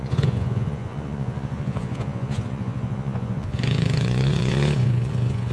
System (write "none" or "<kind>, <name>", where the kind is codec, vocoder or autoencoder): vocoder, Vocos